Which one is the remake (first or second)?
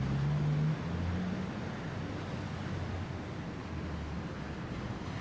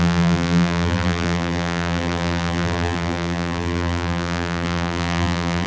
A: second